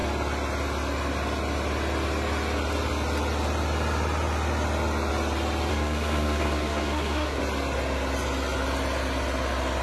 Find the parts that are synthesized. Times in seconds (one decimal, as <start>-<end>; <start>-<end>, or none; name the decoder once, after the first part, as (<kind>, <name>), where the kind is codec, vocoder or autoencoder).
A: 5.7-7.4 (codec, SNAC)